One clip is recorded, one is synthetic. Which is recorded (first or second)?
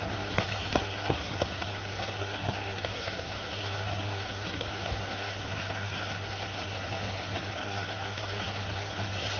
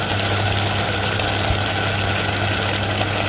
second